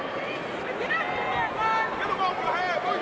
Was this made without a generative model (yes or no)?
yes